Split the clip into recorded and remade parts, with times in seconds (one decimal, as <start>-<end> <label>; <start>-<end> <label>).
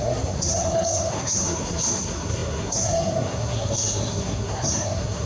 0.0-5.3 remade